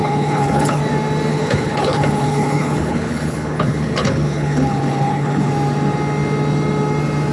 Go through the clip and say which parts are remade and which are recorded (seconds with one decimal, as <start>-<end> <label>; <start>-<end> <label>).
0.0-0.8 remade; 0.8-1.3 recorded; 1.3-5.5 remade; 5.5-7.3 recorded